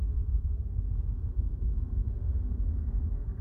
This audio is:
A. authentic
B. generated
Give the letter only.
B